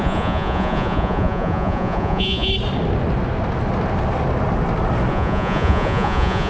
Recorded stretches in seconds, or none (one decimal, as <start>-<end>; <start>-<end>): 2.5-5.1